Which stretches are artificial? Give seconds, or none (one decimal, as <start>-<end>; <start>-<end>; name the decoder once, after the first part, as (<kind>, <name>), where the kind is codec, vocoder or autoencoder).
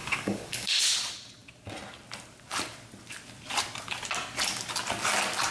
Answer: 0.0-0.8 (codec, DAC)